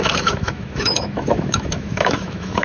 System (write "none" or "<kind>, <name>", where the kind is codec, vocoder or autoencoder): autoencoder, DAC-VAE